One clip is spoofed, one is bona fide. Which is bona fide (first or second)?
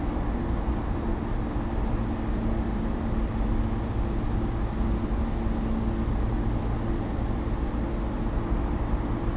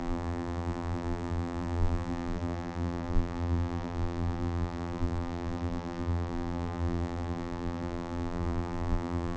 first